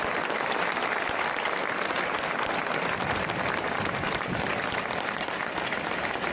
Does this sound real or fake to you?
real